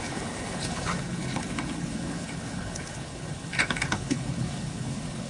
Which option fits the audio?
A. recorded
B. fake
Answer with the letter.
B